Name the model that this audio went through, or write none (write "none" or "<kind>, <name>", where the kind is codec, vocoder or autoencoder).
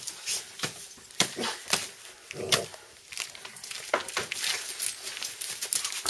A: none